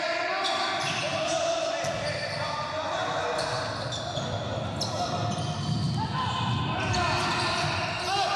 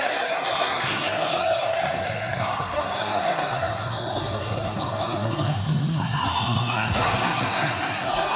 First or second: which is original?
first